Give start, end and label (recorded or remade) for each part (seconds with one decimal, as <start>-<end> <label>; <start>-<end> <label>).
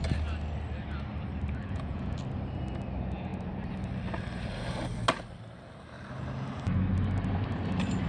0.0-1.6 recorded; 1.6-2.2 remade; 2.2-8.1 recorded